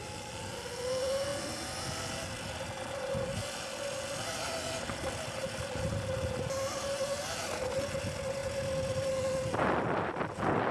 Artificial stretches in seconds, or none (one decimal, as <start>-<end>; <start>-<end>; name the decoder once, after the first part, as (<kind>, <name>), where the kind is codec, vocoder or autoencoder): none